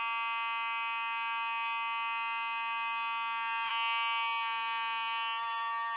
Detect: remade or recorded recorded